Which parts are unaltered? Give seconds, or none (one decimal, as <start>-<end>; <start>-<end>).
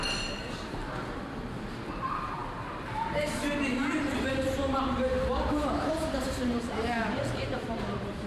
0.8-1.9